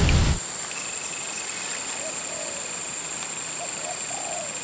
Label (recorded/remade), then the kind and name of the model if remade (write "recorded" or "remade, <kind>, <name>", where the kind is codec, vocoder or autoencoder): recorded